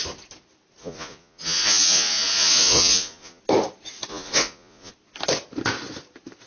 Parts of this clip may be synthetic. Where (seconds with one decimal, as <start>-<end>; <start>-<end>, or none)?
0.8-3.4; 4.1-4.9